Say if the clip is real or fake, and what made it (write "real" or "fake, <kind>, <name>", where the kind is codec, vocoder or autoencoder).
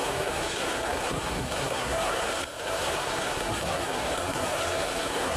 fake, codec, SNAC